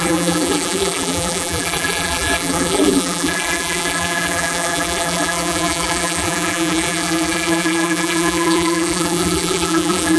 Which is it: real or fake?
fake